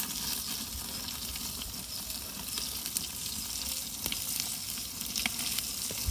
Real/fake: real